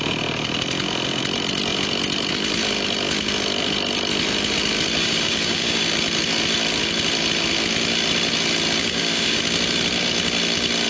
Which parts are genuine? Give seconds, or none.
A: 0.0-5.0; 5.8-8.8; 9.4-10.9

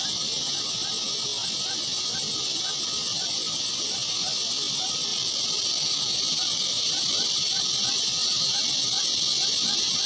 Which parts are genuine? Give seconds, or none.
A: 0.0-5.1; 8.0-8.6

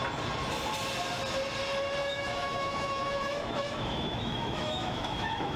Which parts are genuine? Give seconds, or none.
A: 0.0-2.0

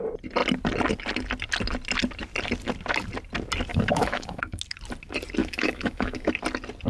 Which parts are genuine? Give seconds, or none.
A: 0.0-3.7; 4.6-5.4; 6.3-6.9

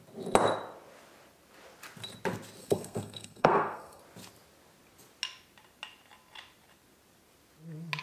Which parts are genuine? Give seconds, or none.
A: 0.0-2.6; 4.0-8.0

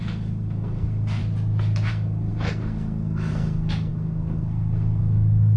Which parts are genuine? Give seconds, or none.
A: 1.2-1.9